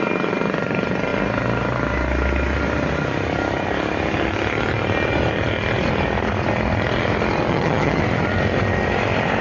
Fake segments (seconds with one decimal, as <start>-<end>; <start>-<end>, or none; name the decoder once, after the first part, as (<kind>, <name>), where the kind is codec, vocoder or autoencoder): 7.5-8.0 (vocoder, HiFi-GAN)